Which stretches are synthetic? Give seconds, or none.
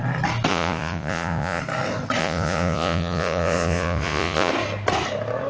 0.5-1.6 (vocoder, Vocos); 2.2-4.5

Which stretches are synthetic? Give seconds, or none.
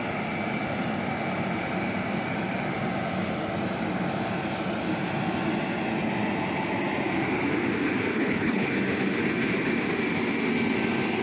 8.1-8.7 (codec, HILCodec)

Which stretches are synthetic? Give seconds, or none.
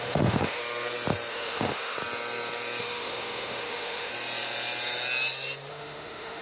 0.0-0.6 (autoencoder, DAC-VAE); 1.3-2.0; 2.8-4.1; 5.7-6.4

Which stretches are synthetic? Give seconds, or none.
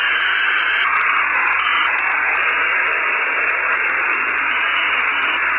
none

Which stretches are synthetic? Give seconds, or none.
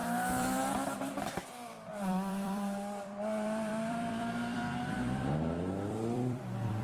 0.0-6.8 (vocoder, BigVGAN v2)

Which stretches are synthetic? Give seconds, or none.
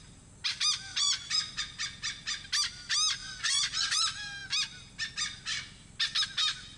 0.9-1.6 (vocoder, Vocos); 3.2-4.0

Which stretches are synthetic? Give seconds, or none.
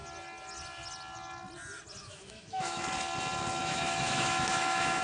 2.0-2.8 (autoencoder, DAC-VAE); 3.6-5.0